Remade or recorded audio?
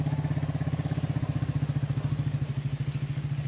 recorded